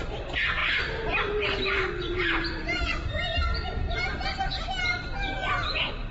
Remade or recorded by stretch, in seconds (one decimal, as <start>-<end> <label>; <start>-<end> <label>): 0.0-0.6 recorded; 0.6-2.8 remade; 2.8-6.1 recorded